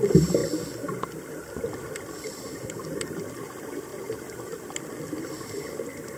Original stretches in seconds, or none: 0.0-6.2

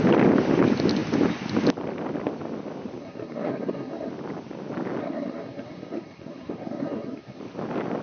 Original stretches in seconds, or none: 0.0-3.0; 4.1-5.0; 7.4-8.0

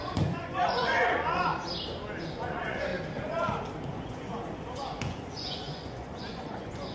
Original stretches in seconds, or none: 1.5-2.2; 2.9-3.9